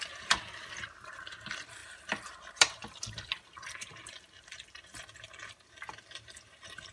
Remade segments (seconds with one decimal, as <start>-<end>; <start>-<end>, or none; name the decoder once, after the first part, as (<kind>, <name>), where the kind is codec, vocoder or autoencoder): 0.0-6.9 (vocoder, BigVGAN v2)